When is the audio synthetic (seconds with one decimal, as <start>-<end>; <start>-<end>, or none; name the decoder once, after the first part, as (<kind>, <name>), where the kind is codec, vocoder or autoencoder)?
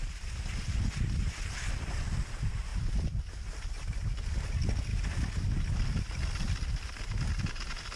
0.0-1.3 (vocoder, BigVGAN v2); 2.7-3.5; 4.9-6.7